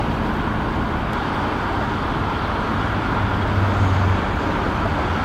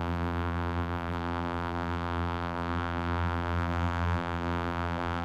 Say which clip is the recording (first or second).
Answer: first